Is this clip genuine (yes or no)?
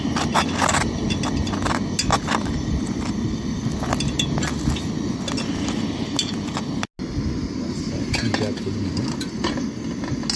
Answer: yes